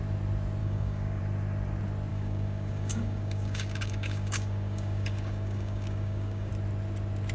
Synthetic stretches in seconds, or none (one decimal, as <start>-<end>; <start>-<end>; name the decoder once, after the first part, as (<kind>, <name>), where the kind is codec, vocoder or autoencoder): 0.6-1.2 (codec, DAC); 2.1-6.5